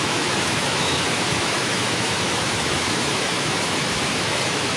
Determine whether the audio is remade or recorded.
remade